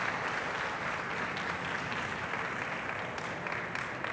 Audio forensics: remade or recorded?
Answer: recorded